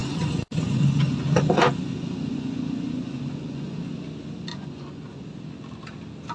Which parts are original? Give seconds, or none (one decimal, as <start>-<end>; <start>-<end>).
3.8-4.5; 5.2-6.3